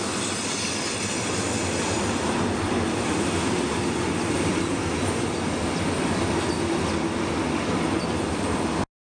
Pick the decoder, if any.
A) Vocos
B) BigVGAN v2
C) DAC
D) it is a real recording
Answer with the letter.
D